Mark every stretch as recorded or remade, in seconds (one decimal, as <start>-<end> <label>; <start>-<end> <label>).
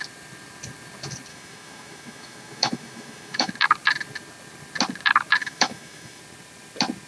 0.0-1.3 recorded; 1.3-3.5 remade; 3.5-5.4 recorded; 5.4-6.2 remade; 6.2-7.1 recorded